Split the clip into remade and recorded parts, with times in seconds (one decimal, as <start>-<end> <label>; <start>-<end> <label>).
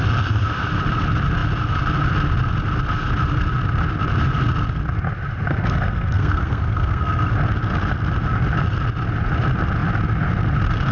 0.0-5.5 recorded; 5.5-7.3 remade; 7.3-10.9 recorded